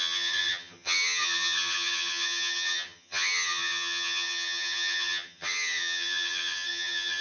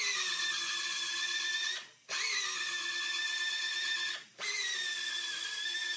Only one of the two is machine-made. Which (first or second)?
first